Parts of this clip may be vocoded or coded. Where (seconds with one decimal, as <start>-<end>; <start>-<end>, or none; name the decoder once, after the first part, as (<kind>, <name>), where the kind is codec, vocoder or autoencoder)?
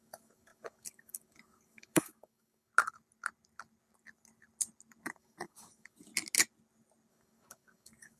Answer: 0.0-2.7 (codec, DAC); 5.1-6.1; 7.1-8.2